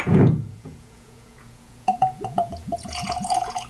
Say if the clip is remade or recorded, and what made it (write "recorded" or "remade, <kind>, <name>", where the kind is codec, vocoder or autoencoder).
remade, vocoder, Vocos